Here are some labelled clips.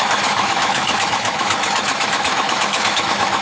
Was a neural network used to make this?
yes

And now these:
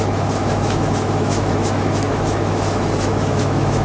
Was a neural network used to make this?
yes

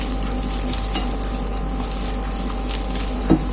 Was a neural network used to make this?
no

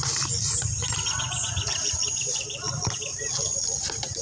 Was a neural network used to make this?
no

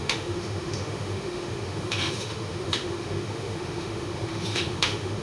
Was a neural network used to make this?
yes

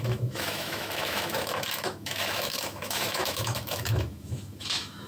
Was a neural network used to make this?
yes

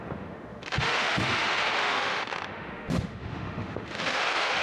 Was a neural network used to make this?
yes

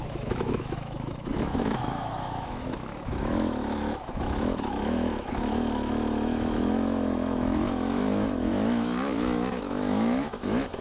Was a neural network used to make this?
yes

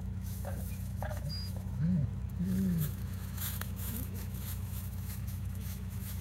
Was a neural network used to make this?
yes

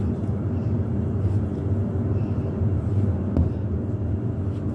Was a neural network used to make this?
no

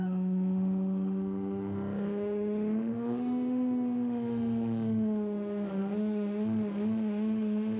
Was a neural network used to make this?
yes